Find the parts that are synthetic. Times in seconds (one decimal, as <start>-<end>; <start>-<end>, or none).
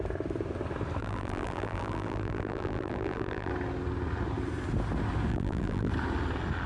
1.0-3.5; 5.3-5.9